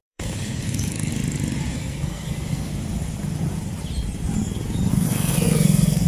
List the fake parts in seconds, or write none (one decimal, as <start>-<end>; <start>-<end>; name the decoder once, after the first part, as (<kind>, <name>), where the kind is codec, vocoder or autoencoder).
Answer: 0.0-1.1 (codec, SNAC); 1.7-2.7; 4.9-6.1